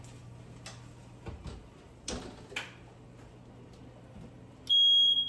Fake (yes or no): no